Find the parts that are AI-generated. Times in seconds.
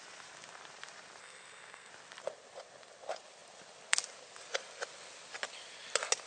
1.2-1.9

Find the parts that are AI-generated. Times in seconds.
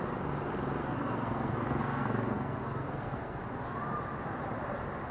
0.8-3.4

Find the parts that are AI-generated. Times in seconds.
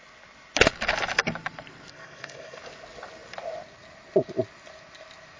1.9-2.6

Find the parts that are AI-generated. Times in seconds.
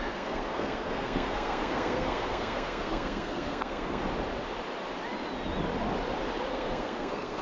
0.0-4.0; 6.5-7.4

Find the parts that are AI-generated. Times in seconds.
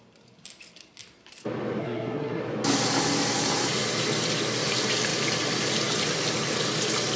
1.8-2.4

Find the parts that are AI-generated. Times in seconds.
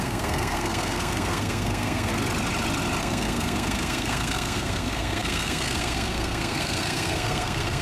0.0-2.1; 3.0-7.8